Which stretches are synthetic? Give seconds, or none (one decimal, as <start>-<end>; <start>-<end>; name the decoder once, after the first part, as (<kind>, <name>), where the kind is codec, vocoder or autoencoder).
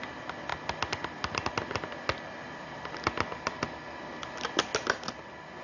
none